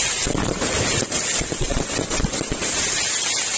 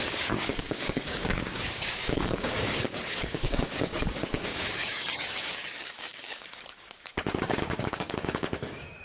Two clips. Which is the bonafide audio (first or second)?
first